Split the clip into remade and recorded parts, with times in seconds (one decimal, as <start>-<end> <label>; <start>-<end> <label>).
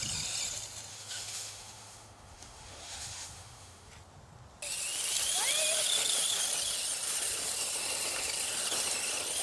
0.0-0.9 recorded; 0.9-3.9 remade; 3.9-9.4 recorded